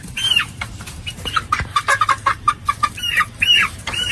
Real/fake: fake